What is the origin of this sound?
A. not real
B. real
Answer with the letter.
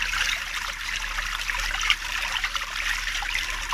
A